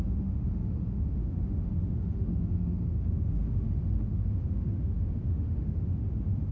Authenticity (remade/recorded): remade